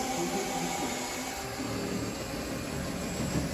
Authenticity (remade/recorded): recorded